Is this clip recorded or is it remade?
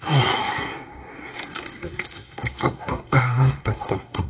remade